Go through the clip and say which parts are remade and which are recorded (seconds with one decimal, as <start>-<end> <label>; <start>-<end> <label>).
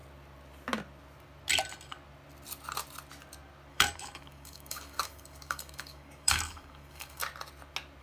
0.0-3.7 recorded; 3.7-7.2 remade; 7.2-8.0 recorded